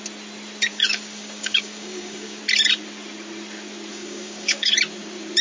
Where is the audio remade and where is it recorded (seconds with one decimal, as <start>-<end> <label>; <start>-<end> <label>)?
0.0-0.7 recorded; 0.7-2.4 remade; 2.4-3.9 recorded; 3.9-4.7 remade; 4.7-5.4 recorded